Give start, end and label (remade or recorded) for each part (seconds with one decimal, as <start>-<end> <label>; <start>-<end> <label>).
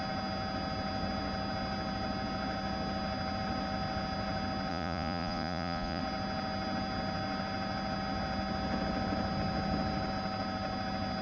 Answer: 0.0-4.7 recorded; 4.7-6.0 remade; 6.0-11.2 recorded